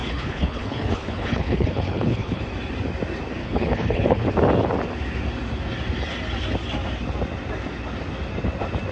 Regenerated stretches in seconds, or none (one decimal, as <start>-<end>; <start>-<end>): 0.0-2.4; 3.4-4.3